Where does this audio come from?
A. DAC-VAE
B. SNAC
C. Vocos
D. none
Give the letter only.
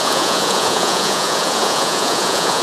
C